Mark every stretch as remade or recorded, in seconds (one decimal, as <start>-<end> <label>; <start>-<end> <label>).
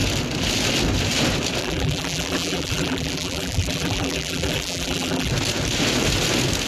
0.0-1.6 recorded; 1.6-5.3 remade; 5.3-6.7 recorded